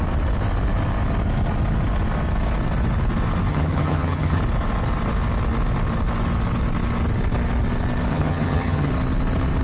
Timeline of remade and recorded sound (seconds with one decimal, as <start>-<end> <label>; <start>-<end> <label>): 0.0-3.5 recorded; 3.5-4.4 remade; 4.4-8.1 recorded; 8.1-8.9 remade; 8.9-9.6 recorded